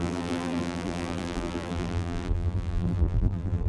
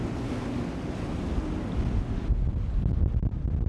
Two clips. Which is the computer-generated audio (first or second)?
first